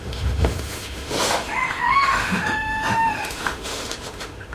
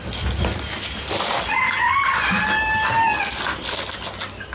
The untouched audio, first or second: second